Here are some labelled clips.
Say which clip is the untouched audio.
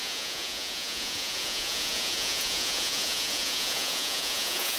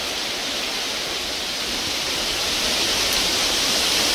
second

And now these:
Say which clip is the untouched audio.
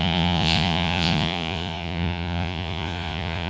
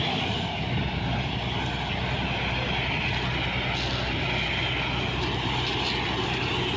second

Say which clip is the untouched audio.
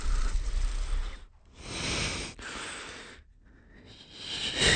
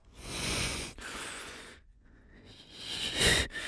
first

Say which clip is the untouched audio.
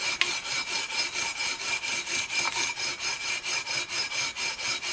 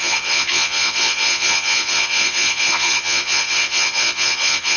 first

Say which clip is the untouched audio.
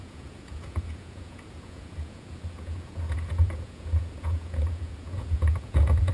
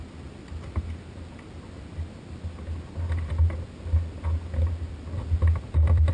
second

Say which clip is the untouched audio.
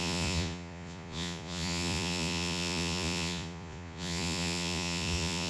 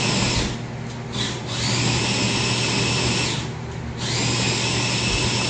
second